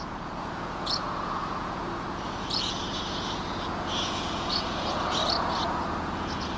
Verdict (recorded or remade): remade